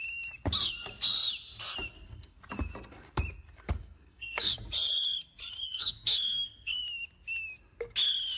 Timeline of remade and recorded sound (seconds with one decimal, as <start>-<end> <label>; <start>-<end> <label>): 0.0-1.9 recorded; 1.9-2.4 remade; 2.4-3.8 recorded; 3.8-4.5 remade; 4.5-5.6 recorded; 5.6-6.8 remade; 6.8-8.4 recorded